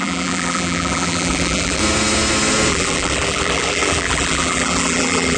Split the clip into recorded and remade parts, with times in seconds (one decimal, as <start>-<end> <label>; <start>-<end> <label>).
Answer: 0.0-1.8 remade; 1.8-2.7 recorded; 2.7-5.4 remade